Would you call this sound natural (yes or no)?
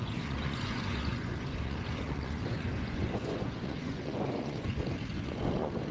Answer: no